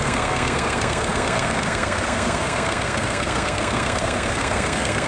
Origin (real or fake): fake